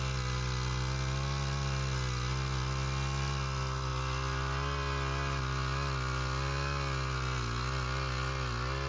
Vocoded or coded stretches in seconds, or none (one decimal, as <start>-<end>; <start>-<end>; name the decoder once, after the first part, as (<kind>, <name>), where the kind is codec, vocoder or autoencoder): none